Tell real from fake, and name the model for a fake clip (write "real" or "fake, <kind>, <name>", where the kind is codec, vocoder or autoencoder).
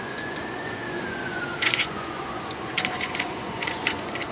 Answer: fake, vocoder, Vocos